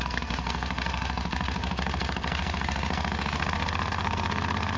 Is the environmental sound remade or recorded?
remade